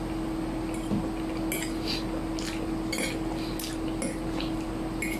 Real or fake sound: real